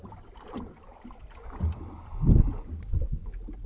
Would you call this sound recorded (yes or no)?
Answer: yes